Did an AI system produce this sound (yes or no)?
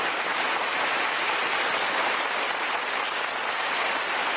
no